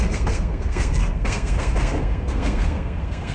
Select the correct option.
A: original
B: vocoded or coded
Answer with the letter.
B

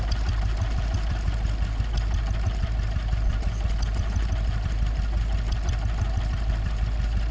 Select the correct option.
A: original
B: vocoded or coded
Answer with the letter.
A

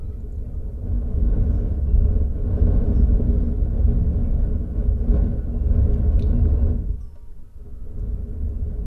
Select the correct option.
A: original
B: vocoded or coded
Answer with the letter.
A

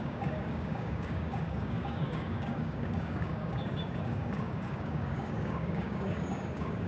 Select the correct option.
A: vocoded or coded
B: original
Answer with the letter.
A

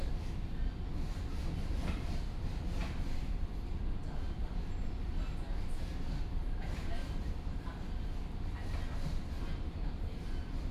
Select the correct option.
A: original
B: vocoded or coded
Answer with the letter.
A